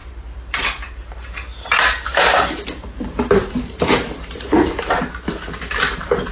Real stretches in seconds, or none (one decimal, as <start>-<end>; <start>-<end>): none